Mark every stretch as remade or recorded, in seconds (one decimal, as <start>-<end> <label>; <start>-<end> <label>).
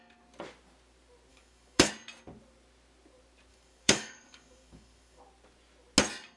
0.0-1.3 recorded; 1.3-1.9 remade; 1.9-3.5 recorded; 3.5-5.2 remade; 5.2-6.4 recorded